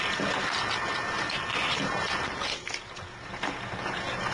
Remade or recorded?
recorded